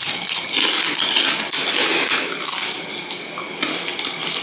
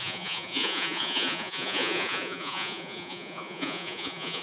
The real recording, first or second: first